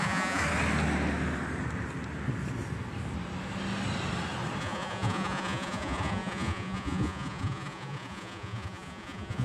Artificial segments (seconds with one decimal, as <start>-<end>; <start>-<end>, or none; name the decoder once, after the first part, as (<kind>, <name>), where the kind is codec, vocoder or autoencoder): 0.0-0.4 (vocoder, Vocos); 4.6-9.4